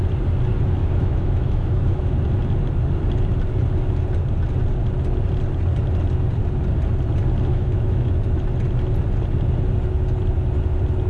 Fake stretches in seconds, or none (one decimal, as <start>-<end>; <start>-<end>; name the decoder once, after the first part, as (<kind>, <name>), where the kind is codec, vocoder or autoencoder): 0.8-2.1 (autoencoder, DAC-VAE); 7.5-8.1